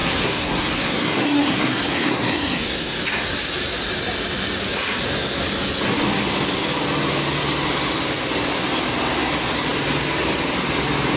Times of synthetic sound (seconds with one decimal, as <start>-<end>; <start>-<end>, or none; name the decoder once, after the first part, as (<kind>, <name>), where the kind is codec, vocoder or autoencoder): 0.0-3.0 (codec, SNAC)

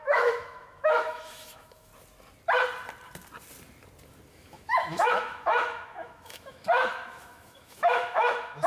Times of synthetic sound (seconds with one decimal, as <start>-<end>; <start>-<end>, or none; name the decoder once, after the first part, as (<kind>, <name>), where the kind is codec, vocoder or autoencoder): 0.0-1.9 (autoencoder, DAC-VAE); 4.3-8.7

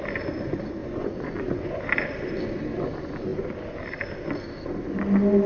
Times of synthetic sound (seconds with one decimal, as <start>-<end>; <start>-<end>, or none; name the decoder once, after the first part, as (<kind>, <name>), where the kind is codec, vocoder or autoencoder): 0.8-1.8 (vocoder, Vocos)

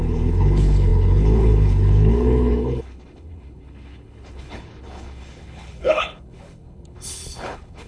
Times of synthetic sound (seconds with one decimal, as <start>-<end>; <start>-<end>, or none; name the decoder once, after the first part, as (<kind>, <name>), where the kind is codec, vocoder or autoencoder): 0.0-7.9 (codec, HILCodec)

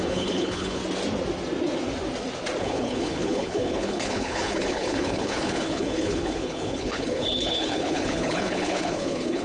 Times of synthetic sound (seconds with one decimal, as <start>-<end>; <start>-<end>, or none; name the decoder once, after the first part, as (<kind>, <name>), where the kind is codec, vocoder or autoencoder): 0.0-0.8 (codec, HILCodec); 2.6-9.4

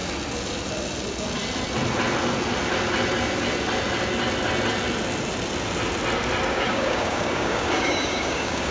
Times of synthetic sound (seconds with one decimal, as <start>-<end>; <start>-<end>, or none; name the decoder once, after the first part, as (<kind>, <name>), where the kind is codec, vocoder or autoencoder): 6.5-8.7 (codec, DAC)

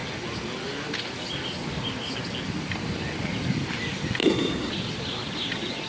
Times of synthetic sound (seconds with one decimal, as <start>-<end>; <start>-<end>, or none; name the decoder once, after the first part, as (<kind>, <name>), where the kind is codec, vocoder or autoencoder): 4.2-4.7 (codec, SNAC)

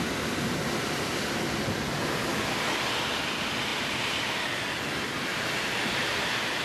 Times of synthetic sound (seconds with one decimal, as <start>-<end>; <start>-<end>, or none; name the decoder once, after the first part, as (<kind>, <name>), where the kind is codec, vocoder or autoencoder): 3.7-4.4 (vocoder, BigVGAN v2); 5.3-6.6